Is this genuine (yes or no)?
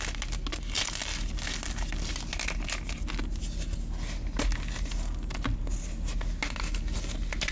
yes